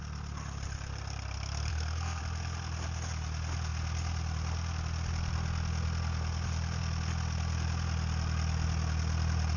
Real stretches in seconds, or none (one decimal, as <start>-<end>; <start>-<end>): 0.0-1.7; 2.2-9.6